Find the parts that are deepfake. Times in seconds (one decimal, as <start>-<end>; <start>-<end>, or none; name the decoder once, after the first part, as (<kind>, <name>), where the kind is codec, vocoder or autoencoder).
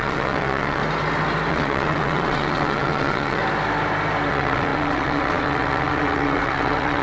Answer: 0.0-0.8 (vocoder, WaveNeXt); 1.5-3.4; 4.3-7.0